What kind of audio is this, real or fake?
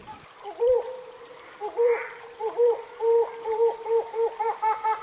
real